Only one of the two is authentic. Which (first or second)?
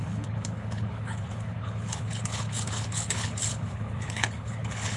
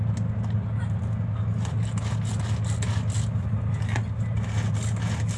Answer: second